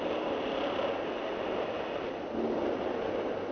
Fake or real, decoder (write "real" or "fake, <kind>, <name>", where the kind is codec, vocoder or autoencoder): real